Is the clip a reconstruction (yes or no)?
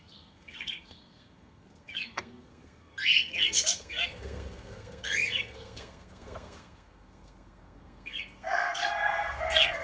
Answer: yes